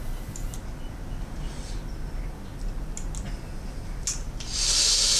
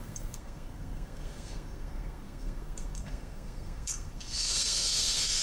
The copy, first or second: second